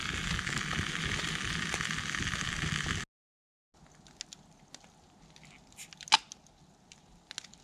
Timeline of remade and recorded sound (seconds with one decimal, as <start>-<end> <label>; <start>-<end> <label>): 0.0-7.6 recorded